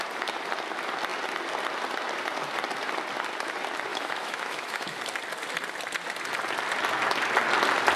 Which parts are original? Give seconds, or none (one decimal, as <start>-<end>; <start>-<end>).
0.0-3.9; 5.0-8.0